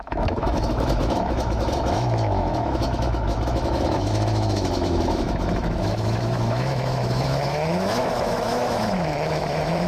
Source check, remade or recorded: remade